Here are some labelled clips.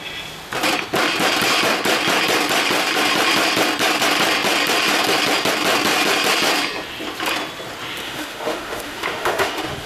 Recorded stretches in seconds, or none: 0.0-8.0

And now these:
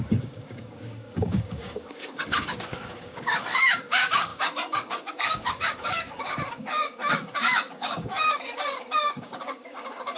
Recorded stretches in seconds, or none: none

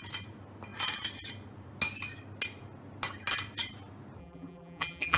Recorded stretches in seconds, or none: 0.0-4.2